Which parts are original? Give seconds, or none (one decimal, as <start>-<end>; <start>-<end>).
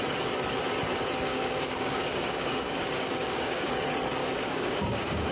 0.0-1.3; 3.7-4.2